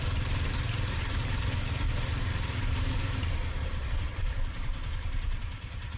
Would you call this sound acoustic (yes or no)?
no